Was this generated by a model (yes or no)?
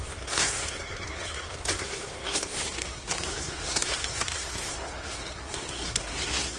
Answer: yes